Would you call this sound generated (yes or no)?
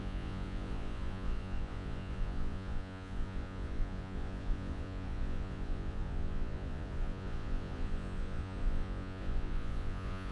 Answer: yes